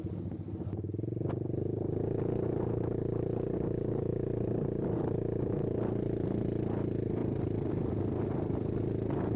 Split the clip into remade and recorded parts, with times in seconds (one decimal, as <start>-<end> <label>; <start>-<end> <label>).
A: 0.0-9.4 recorded